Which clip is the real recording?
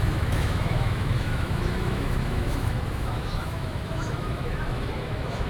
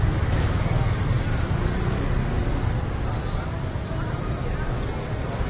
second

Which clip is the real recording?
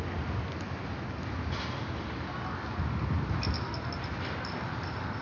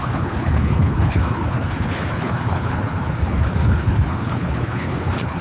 first